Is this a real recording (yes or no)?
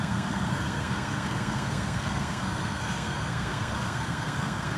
no